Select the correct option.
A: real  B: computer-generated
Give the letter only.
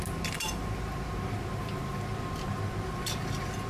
A